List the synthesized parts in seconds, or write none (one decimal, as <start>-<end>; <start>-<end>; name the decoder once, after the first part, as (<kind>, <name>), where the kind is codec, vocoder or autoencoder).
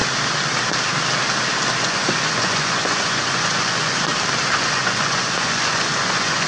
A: 1.8-4.1 (vocoder, Vocos); 4.6-6.5